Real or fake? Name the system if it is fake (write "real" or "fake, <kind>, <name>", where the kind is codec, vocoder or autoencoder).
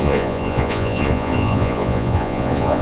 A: fake, vocoder, Vocos